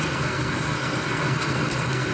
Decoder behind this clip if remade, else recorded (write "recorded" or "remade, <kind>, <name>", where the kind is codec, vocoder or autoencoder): remade, codec, SNAC